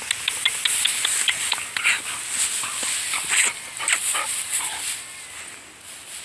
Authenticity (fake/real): real